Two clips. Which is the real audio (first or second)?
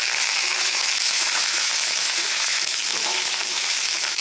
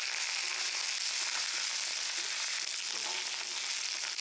second